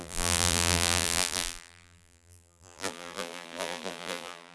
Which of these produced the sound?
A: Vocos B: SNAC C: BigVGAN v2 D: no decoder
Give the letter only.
C